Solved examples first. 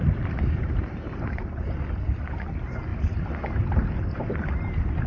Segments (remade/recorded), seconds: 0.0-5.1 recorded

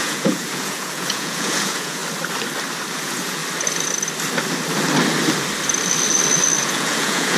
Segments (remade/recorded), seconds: 0.0-2.0 remade; 2.0-3.0 recorded; 3.0-3.4 remade; 3.4-6.6 recorded; 6.6-7.4 remade

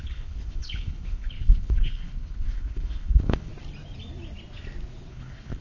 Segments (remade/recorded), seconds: 0.0-3.5 remade; 3.5-5.1 recorded; 5.1-5.6 remade

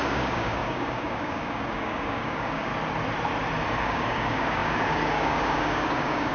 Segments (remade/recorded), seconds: 0.0-2.7 remade; 2.7-3.8 recorded; 3.8-6.3 remade

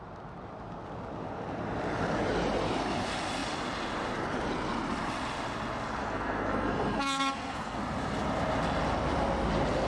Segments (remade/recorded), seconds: 0.0-6.0 recorded; 6.0-7.8 remade; 7.8-9.9 recorded

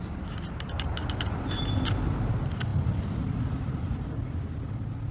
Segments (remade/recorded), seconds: 0.0-5.1 recorded

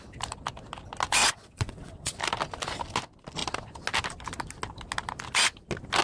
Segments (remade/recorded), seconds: 0.0-1.2 recorded; 1.2-2.2 remade; 2.2-6.0 recorded